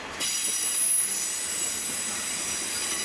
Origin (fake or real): real